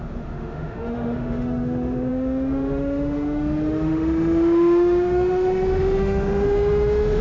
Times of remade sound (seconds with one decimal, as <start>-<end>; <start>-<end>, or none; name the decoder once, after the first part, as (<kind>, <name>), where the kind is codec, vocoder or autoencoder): 0.0-7.2 (autoencoder, DAC-VAE)